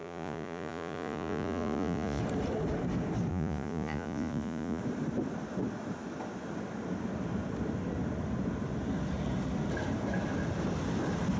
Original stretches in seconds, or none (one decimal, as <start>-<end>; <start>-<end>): 2.2-3.3; 4.8-11.4